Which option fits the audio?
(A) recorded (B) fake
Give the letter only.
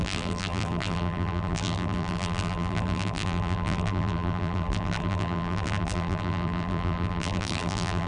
B